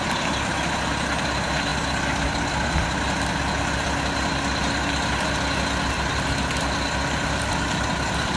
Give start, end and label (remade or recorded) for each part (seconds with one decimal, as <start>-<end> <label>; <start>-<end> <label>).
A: 0.0-8.4 recorded